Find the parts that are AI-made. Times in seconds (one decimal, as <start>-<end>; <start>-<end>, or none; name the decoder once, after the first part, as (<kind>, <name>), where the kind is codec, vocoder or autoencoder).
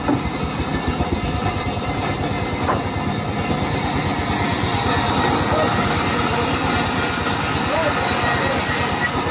none